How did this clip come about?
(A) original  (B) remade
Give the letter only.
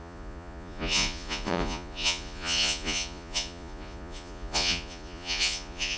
B